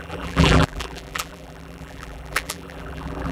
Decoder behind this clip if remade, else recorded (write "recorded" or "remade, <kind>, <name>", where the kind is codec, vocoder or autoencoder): remade, vocoder, BigVGAN v2